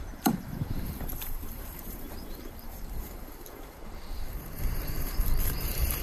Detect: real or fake fake